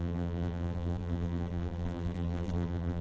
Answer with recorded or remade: remade